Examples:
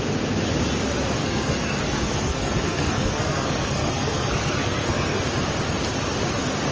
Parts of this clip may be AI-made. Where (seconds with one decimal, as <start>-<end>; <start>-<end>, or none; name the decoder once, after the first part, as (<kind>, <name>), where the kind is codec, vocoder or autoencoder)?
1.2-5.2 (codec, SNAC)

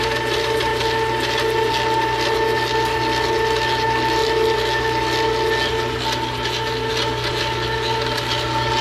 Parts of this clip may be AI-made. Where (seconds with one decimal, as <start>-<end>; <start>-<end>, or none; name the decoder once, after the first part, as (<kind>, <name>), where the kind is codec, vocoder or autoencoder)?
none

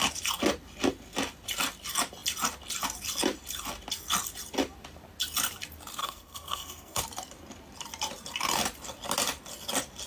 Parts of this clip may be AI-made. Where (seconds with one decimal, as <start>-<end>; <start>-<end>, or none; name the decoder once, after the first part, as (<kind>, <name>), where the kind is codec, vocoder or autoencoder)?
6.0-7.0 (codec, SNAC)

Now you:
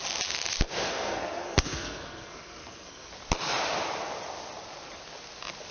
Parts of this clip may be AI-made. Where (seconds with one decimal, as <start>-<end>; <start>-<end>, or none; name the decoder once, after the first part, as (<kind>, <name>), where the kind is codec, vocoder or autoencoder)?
0.9-3.1 (codec, SNAC)

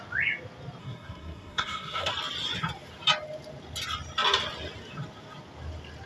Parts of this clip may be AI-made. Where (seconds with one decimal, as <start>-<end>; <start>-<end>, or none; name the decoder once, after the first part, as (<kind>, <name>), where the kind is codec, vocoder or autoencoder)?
0.8-2.1 (codec, SNAC)

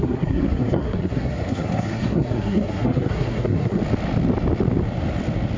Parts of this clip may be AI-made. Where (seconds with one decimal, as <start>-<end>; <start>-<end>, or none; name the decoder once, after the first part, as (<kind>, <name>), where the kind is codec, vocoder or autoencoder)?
0.0-3.8 (codec, SNAC)

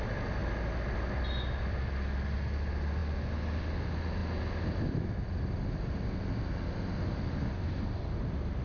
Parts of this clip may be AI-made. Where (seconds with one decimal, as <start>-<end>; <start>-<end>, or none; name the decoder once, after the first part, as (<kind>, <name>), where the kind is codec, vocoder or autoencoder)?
none